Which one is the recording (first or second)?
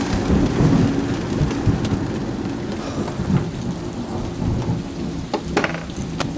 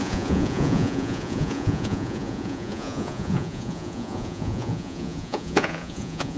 first